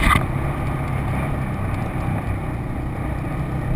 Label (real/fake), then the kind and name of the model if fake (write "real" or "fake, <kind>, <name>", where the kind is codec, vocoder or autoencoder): real